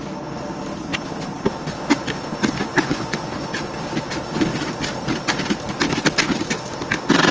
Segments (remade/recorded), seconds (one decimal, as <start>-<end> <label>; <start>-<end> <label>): 0.0-2.7 recorded; 2.7-3.3 remade; 3.3-7.3 recorded